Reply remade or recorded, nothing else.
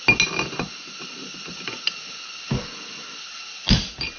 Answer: recorded